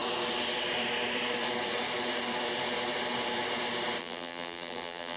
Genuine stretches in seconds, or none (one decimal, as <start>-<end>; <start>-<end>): 0.0-4.0